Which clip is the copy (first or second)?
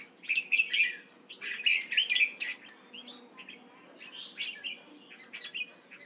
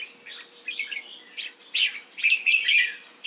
second